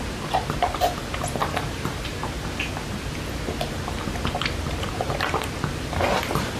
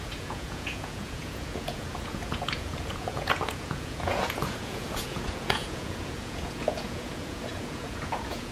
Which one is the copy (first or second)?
second